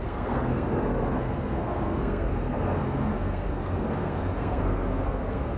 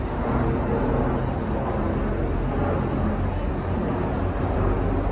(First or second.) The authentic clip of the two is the second